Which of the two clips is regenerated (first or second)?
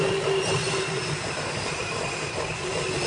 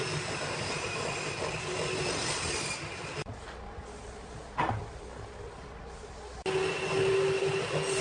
first